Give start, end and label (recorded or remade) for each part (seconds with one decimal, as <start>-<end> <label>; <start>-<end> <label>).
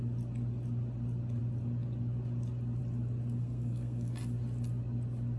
0.0-3.4 recorded; 3.4-4.1 remade; 4.1-5.4 recorded